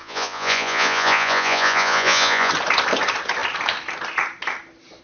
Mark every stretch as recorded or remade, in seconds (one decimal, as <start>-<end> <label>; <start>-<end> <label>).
0.0-2.5 remade; 2.5-5.0 recorded